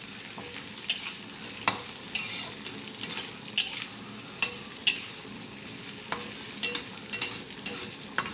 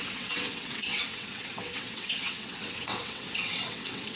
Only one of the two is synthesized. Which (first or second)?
second